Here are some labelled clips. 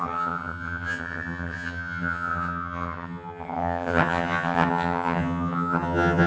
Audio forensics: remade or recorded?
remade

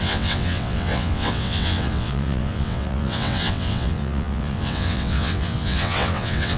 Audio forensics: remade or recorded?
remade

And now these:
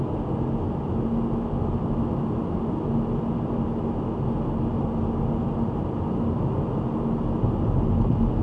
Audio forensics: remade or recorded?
recorded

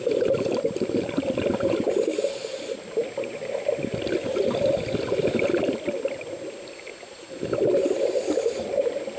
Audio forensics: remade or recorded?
recorded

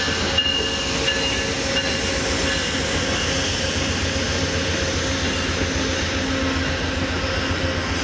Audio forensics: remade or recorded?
recorded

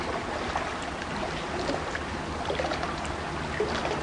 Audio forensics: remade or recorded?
recorded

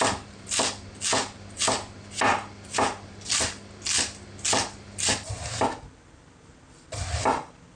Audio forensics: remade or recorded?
recorded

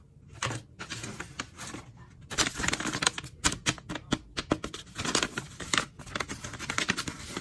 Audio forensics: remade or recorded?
recorded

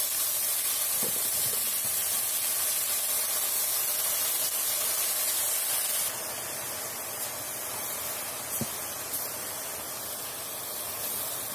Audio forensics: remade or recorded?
recorded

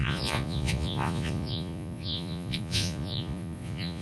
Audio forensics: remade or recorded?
remade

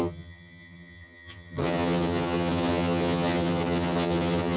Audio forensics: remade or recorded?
remade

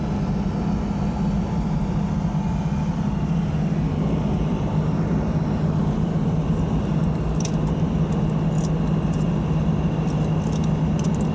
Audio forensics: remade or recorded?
recorded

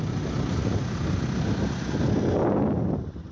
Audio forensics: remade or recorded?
recorded